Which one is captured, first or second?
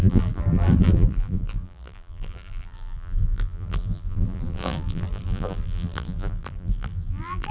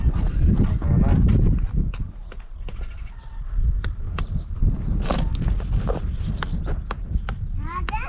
second